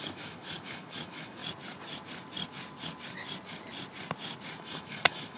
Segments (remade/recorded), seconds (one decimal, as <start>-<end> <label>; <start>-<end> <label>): 0.0-1.4 remade; 1.4-4.6 recorded; 4.6-5.4 remade